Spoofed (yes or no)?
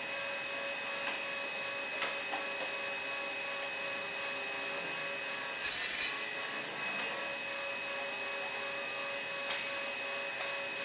no